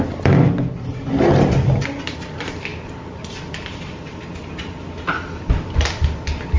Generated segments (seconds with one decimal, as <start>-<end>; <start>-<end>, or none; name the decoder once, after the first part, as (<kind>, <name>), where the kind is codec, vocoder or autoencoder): none